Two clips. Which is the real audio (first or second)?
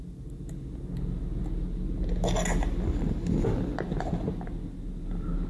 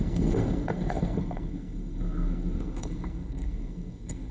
first